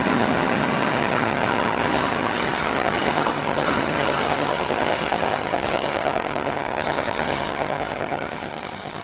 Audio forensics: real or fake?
fake